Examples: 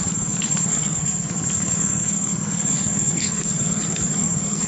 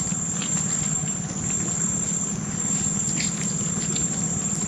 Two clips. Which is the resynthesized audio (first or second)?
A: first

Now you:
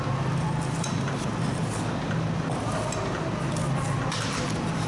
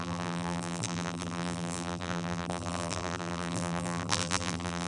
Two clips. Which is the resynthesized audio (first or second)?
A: second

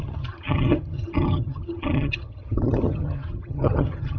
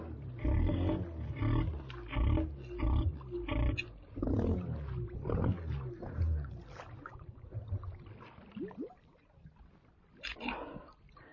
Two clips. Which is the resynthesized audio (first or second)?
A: first